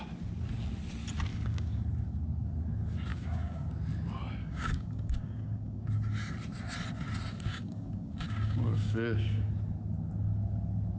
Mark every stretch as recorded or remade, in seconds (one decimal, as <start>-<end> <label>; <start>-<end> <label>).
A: 0.0-1.3 recorded; 1.3-1.8 remade; 1.8-3.1 recorded; 3.1-3.7 remade; 3.7-4.4 recorded; 4.4-5.8 remade; 5.8-7.5 recorded; 7.5-9.5 remade; 9.5-11.0 recorded